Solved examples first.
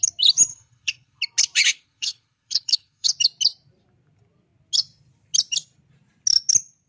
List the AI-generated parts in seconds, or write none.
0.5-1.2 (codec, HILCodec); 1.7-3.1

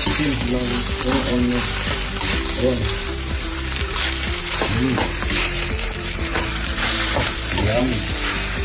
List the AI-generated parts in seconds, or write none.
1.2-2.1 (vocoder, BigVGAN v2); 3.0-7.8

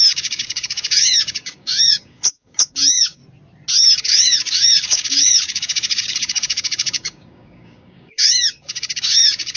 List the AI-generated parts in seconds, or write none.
0.0-3.2 (codec, DAC); 3.7-9.6

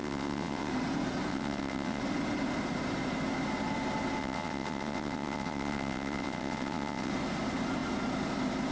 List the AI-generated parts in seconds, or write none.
0.0-0.7 (vocoder, WaveNeXt); 1.3-2.0; 4.2-7.1

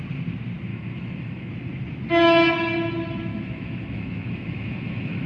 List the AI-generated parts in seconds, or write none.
0.7-1.5 (autoencoder, DAC-VAE); 3.3-5.3